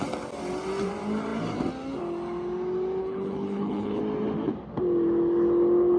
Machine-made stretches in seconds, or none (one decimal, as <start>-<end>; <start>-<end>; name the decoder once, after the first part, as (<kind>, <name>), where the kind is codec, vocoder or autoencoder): 3.0-4.0 (codec, HILCodec)